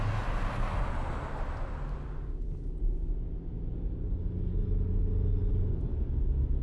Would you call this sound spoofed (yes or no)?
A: no